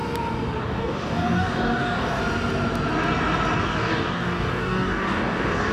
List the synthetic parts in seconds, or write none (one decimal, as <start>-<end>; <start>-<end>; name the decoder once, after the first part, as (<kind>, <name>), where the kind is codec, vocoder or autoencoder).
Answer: 0.6-2.2 (codec, DAC); 3.6-5.7